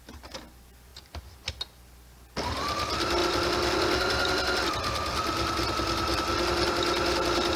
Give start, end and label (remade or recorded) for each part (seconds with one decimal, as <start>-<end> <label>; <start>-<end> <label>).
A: 0.0-7.6 recorded